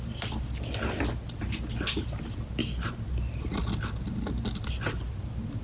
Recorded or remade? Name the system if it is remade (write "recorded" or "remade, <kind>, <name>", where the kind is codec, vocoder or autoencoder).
recorded